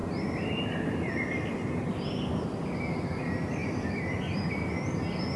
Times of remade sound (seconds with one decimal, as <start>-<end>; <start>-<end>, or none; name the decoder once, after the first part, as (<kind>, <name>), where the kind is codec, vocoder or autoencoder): none